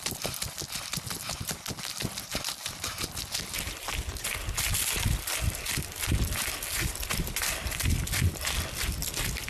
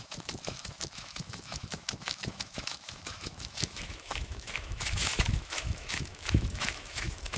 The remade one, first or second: second